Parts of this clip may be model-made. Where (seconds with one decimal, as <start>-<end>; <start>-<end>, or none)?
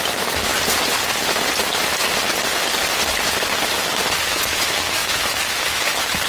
0.0-0.5; 4.3-6.3